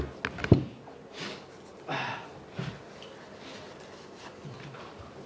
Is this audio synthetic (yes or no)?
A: no